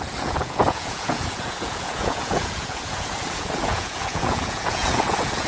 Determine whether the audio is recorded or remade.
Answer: remade